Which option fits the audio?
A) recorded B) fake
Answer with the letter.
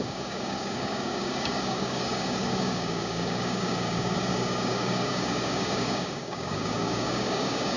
B